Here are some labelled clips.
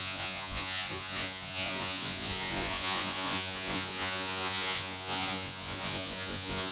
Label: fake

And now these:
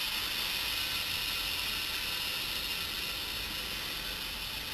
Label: real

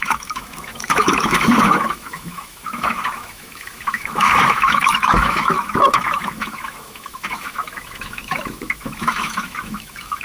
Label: fake